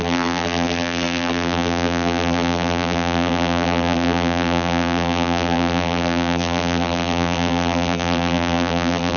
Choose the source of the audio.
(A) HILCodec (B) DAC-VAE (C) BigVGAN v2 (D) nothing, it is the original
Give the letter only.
C